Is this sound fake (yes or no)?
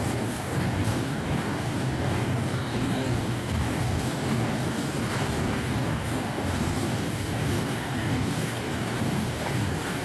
yes